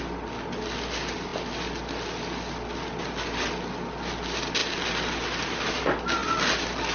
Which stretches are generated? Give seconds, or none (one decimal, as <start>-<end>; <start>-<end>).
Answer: none

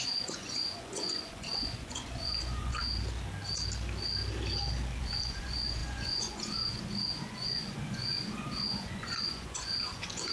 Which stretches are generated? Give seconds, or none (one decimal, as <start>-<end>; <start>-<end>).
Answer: 0.0-2.8; 5.0-10.3

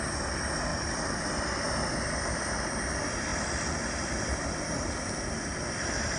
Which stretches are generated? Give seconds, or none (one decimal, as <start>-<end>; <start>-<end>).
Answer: 0.7-1.2; 3.3-6.2

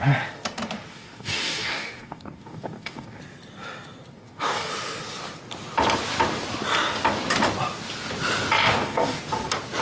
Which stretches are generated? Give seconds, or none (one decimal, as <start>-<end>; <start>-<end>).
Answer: 0.9-3.2; 4.1-4.7; 8.7-9.2